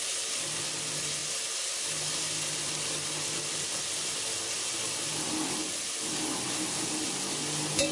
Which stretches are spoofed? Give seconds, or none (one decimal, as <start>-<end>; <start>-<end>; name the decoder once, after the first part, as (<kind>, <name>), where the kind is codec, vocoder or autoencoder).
none